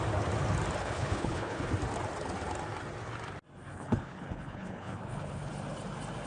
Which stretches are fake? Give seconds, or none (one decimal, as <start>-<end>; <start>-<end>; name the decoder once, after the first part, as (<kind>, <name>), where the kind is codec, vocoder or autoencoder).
0.8-1.7 (codec, HILCodec); 3.7-5.5